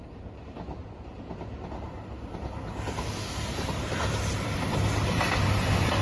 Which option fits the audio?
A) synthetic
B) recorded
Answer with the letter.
B